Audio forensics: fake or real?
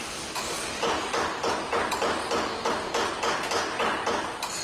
real